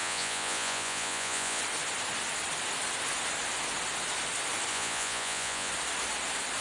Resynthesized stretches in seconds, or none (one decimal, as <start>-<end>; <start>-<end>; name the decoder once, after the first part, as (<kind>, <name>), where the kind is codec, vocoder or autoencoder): 0.0-1.6 (vocoder, Vocos); 4.7-5.7